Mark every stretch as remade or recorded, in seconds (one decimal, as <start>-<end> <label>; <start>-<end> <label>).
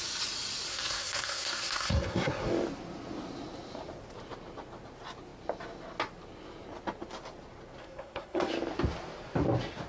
0.0-0.7 recorded; 0.7-2.5 remade; 2.5-7.8 recorded; 7.8-8.5 remade; 8.5-9.9 recorded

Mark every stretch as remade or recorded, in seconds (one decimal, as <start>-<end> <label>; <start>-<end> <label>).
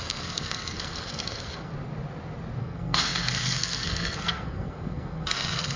0.0-1.7 remade; 1.7-2.6 recorded; 2.6-5.8 remade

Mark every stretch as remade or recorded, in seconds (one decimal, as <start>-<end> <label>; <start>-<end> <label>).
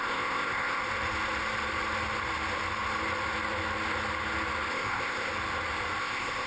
0.0-0.8 remade; 0.8-4.7 recorded; 4.7-5.3 remade; 5.3-6.0 recorded; 6.0-6.5 remade